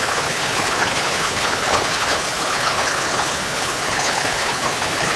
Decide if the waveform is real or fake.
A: fake